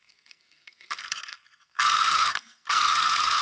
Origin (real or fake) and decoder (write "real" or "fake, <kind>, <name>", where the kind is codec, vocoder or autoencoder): fake, codec, SNAC